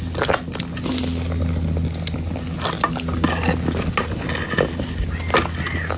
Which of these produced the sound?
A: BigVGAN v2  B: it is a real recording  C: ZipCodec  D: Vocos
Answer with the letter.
B